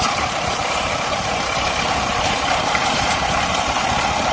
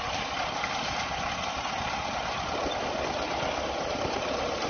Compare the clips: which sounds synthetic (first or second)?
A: first